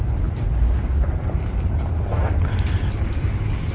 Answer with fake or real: real